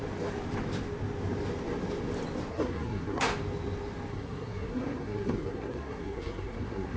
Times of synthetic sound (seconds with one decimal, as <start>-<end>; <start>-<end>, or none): 2.5-3.3; 4.1-7.0